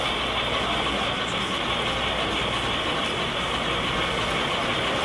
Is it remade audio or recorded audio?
recorded